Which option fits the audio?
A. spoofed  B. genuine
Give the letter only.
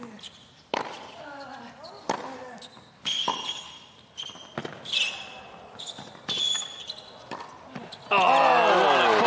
B